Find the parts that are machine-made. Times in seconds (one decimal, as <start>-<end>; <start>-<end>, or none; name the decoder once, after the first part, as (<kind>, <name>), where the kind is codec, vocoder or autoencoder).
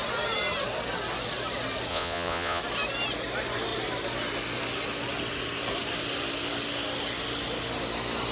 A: 1.9-2.6 (vocoder, Vocos)